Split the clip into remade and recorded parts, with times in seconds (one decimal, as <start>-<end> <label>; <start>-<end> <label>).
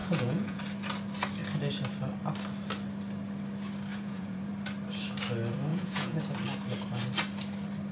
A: 0.0-0.6 remade; 0.6-3.9 recorded; 3.9-4.5 remade; 4.5-5.7 recorded; 5.7-6.2 remade; 6.2-7.9 recorded